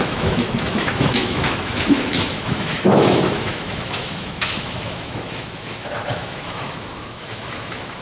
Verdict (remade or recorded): remade